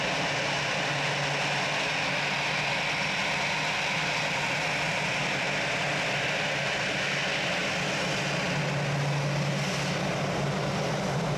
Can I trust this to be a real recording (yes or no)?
yes